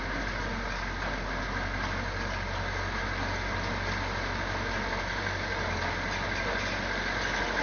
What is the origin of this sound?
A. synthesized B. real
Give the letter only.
B